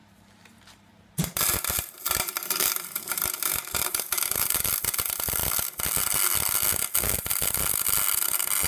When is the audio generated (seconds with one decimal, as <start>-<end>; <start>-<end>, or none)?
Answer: 0.0-4.7